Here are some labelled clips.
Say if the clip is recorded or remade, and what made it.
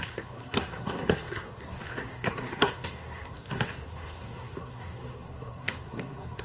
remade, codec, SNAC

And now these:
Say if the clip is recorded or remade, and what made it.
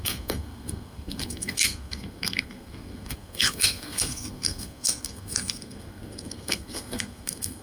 remade, codec, SNAC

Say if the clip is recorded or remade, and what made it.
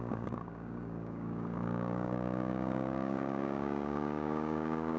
remade, codec, DAC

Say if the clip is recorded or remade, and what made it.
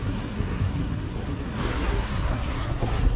remade, codec, SNAC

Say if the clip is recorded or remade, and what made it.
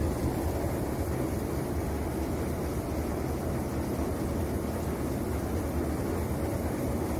recorded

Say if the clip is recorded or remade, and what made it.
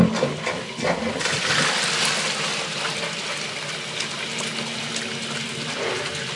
recorded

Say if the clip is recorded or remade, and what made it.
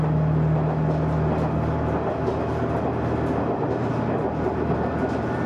recorded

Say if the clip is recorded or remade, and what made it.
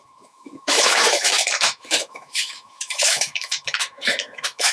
remade, autoencoder, DAC-VAE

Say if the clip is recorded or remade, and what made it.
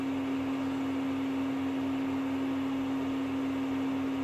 recorded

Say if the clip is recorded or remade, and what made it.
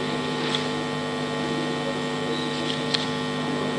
recorded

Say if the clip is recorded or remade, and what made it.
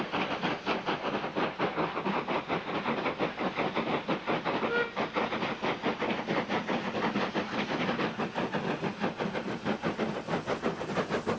recorded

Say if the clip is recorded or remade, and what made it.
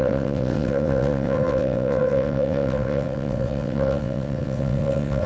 remade, vocoder, WaveNeXt